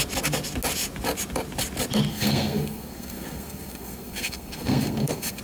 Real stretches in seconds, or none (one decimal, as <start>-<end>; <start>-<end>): 0.0-2.1